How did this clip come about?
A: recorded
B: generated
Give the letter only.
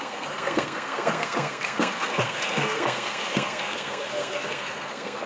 B